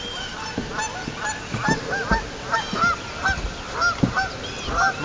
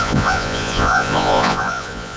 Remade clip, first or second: second